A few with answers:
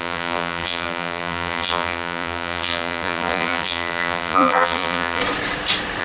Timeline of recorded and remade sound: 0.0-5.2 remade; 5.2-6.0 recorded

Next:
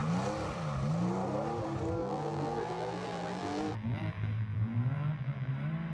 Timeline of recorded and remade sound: 0.0-2.0 recorded; 2.0-5.5 remade; 5.5-5.9 recorded

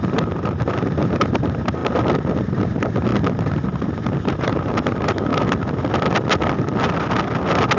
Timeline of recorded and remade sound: 0.0-1.8 remade; 1.8-2.4 recorded; 2.4-3.1 remade; 3.1-4.2 recorded; 4.2-5.3 remade; 5.3-7.8 recorded